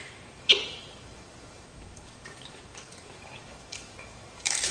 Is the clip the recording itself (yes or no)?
no